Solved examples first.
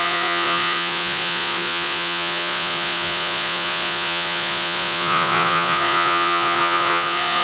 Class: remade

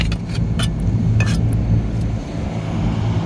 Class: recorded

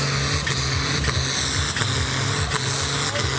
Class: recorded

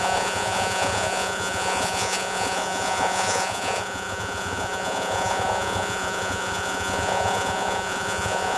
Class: remade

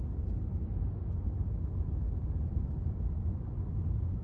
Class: recorded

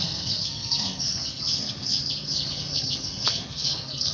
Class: remade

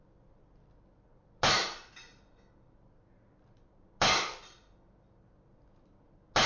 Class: recorded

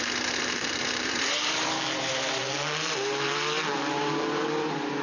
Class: remade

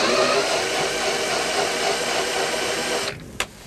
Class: recorded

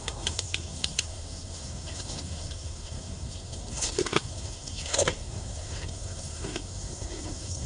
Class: remade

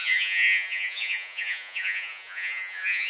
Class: remade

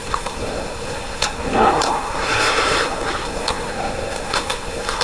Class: remade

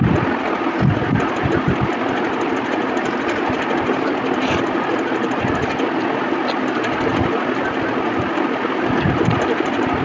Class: recorded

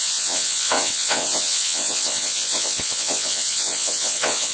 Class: remade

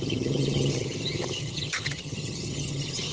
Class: remade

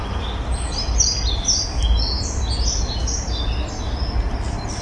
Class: recorded